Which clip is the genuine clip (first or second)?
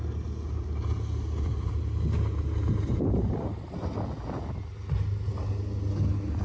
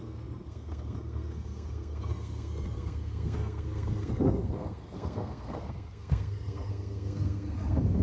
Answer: first